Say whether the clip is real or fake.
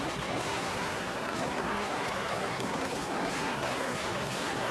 fake